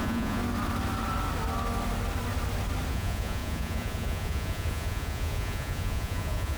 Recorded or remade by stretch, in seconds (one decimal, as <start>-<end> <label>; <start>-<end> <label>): 0.0-0.4 remade; 0.4-2.9 recorded; 2.9-6.6 remade